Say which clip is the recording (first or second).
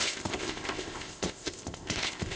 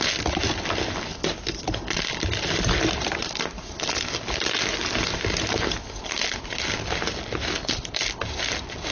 second